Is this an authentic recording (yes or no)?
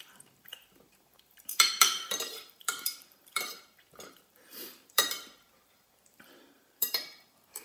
no